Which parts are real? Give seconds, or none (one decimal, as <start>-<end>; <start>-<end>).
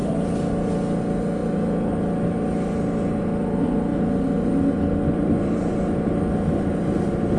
0.0-7.4